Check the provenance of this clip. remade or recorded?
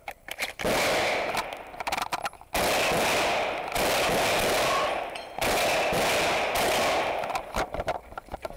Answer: recorded